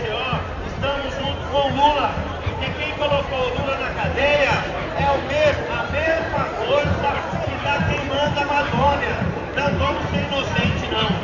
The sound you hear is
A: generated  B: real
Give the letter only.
A